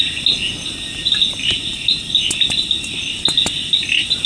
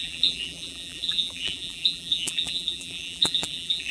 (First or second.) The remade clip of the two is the second